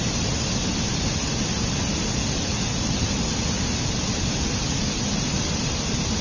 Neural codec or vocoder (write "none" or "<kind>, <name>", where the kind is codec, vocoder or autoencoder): none